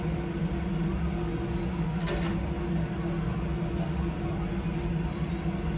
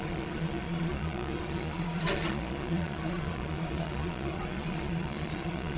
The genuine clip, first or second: first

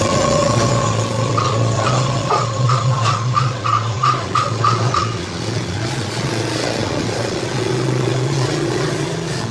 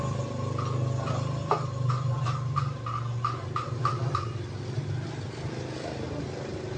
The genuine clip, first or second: second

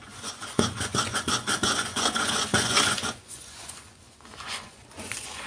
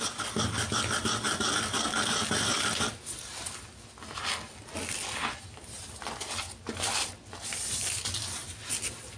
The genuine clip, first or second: second